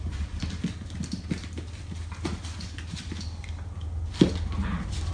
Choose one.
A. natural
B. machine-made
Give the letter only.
A